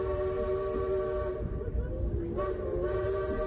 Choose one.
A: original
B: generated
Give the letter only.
B